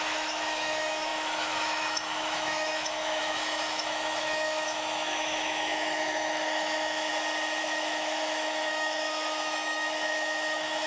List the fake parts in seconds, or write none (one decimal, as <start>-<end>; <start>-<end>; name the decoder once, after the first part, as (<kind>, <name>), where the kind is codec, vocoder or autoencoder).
0.0-7.1 (autoencoder, DAC-VAE); 7.6-10.9